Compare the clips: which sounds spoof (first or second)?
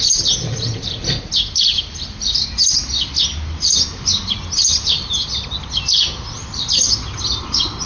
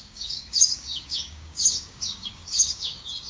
second